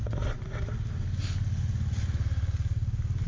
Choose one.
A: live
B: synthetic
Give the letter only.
A